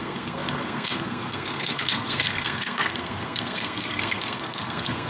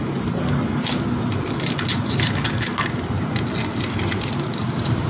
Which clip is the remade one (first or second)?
first